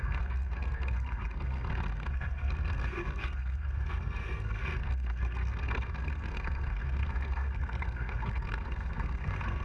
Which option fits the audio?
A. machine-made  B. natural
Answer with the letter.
A